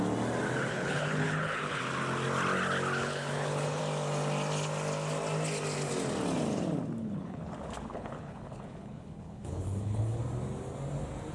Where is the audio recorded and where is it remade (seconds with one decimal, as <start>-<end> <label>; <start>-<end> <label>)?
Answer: 0.0-0.7 recorded; 0.7-1.8 remade; 1.8-3.0 recorded; 3.0-3.8 remade; 3.8-7.0 recorded; 7.0-7.5 remade; 7.5-7.9 recorded; 7.9-10.2 remade; 10.2-11.3 recorded